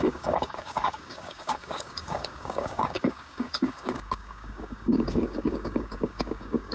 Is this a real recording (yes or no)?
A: no